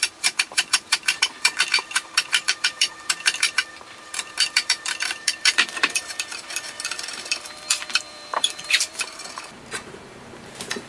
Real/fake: fake